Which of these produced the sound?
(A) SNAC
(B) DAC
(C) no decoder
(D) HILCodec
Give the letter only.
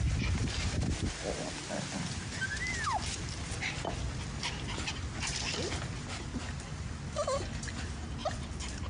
C